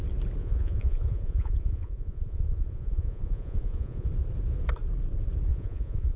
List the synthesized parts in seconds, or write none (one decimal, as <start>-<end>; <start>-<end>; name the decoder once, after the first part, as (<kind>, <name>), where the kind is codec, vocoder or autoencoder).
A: 0.4-4.1 (vocoder, Vocos); 5.5-6.2